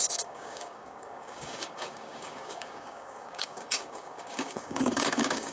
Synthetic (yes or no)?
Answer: yes